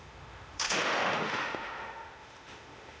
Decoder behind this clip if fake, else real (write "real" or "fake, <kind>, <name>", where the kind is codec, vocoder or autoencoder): fake, autoencoder, DAC-VAE